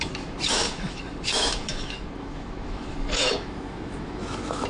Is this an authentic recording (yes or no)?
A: no